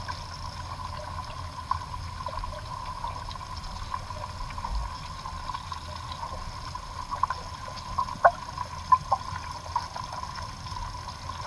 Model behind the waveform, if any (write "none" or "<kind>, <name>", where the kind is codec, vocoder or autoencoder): none